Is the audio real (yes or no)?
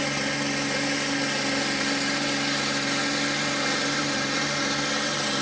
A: yes